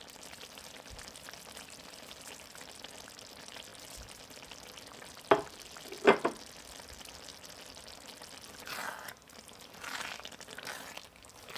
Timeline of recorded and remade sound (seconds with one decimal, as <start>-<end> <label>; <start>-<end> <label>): 0.0-11.6 recorded